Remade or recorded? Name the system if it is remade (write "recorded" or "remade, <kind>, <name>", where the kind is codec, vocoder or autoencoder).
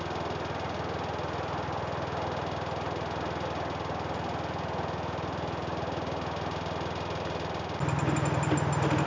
recorded